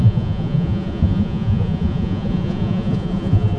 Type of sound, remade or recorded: remade